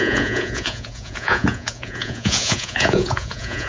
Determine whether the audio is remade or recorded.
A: remade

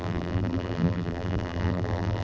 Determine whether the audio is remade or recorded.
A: remade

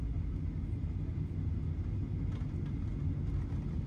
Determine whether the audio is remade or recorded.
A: recorded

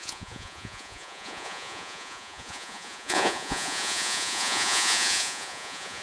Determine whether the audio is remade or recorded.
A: remade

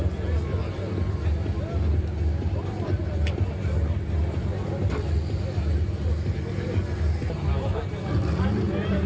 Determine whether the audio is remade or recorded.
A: recorded